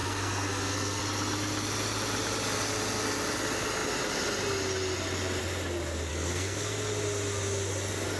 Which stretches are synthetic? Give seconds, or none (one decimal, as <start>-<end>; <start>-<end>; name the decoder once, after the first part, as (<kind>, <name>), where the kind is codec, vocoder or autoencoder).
0.0-1.0 (codec, SNAC); 6.1-6.9